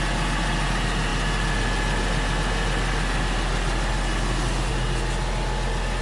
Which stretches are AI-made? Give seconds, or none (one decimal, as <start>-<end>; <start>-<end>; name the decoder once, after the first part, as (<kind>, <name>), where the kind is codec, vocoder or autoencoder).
none